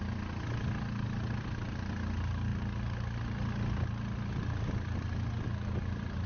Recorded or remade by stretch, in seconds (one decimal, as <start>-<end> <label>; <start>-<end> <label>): 0.0-6.3 recorded